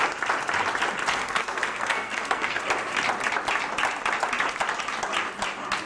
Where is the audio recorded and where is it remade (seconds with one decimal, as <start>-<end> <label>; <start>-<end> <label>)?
0.0-1.1 recorded; 1.1-2.6 remade; 2.6-5.9 recorded